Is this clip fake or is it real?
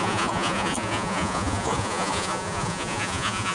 fake